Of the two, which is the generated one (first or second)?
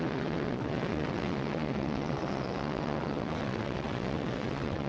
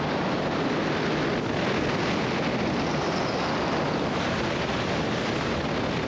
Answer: first